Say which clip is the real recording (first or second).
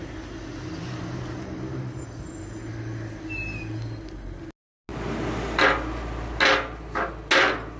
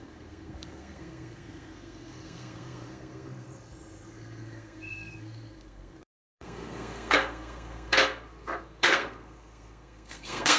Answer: first